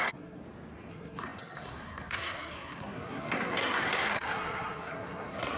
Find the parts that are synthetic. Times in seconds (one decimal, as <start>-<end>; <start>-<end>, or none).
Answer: 0.0-0.4; 0.9-5.6